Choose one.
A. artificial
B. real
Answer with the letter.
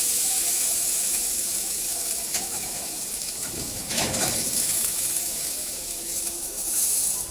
A